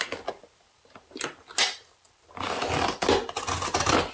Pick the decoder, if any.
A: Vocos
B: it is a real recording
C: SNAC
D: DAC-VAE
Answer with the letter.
B